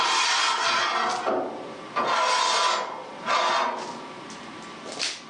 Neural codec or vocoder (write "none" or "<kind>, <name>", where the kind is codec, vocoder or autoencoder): none